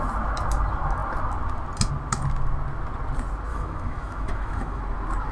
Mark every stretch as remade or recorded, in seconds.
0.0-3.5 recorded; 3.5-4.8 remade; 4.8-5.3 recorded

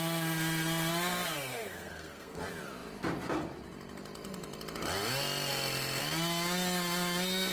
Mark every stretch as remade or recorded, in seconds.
0.0-1.5 recorded; 1.5-2.4 remade; 2.4-7.5 recorded

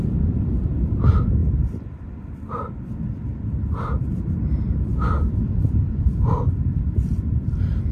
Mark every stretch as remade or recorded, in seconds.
0.0-7.9 remade

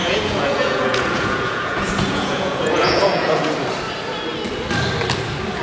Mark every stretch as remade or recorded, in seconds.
0.0-3.4 remade; 3.4-5.6 recorded

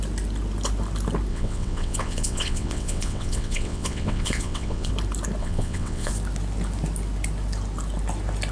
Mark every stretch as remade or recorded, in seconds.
0.0-1.3 recorded; 1.3-4.9 remade; 4.9-5.4 recorded; 5.4-6.1 remade; 6.1-8.5 recorded